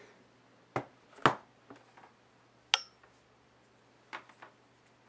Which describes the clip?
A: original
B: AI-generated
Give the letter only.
A